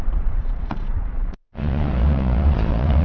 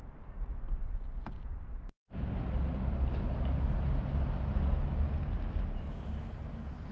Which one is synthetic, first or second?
first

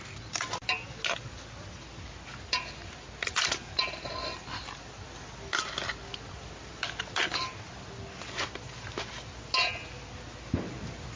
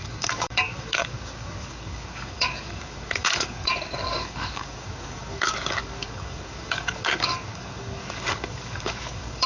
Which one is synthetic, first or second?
second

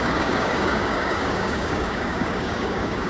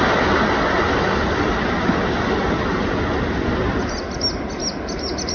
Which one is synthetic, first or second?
first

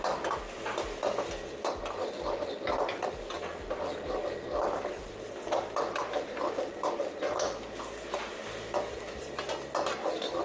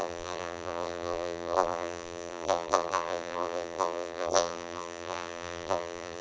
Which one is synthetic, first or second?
second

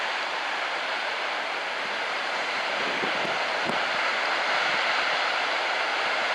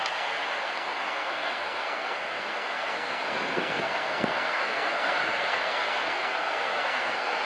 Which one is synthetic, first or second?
second